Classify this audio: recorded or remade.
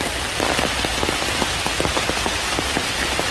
recorded